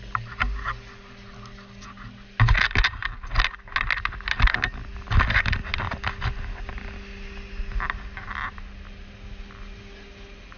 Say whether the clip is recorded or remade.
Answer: recorded